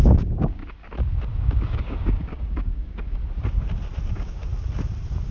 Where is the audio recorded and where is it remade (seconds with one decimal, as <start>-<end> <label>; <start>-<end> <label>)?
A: 0.0-0.6 remade; 0.6-1.2 recorded; 1.2-3.2 remade; 3.2-4.1 recorded; 4.1-4.5 remade; 4.5-5.3 recorded